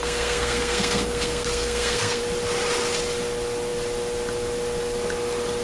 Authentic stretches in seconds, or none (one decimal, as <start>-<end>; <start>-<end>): 2.2-5.6